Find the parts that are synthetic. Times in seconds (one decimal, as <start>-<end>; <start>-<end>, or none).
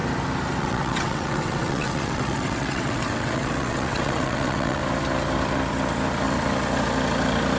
0.6-4.8